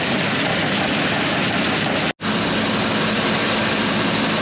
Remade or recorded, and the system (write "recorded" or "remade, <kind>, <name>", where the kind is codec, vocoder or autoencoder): recorded